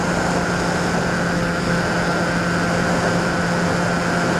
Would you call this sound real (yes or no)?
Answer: yes